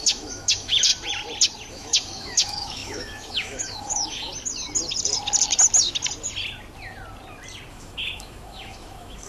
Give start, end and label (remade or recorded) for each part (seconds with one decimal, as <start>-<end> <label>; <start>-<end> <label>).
0.0-0.9 remade; 0.9-1.7 recorded; 1.7-4.3 remade; 4.3-7.7 recorded; 7.7-9.3 remade